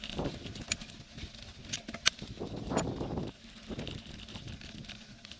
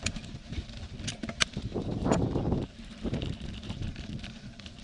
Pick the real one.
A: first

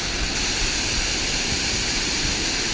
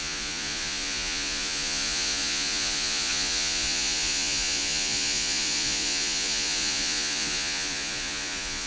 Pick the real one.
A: first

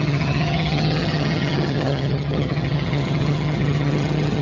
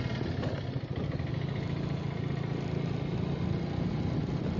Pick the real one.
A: second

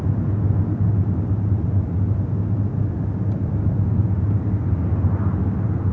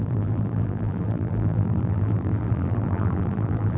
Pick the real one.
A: first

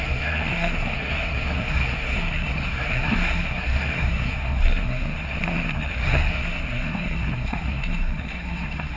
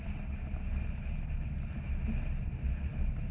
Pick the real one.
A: second